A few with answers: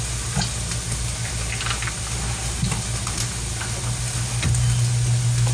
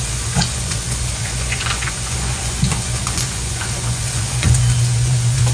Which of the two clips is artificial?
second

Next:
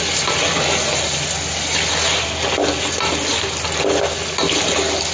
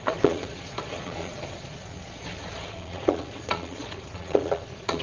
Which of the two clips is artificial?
second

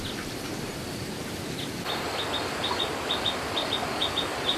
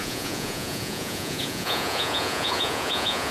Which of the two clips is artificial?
second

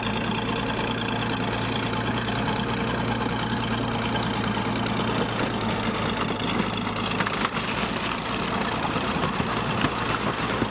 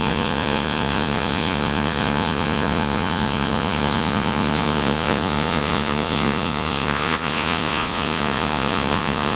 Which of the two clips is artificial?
second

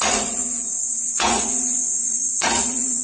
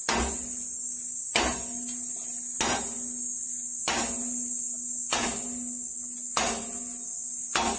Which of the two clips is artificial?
first